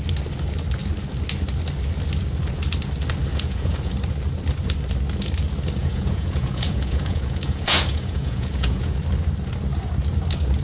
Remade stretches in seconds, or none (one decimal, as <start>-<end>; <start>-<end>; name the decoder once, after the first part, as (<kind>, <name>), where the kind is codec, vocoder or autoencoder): 3.3-3.9 (vocoder, Vocos); 5.8-9.0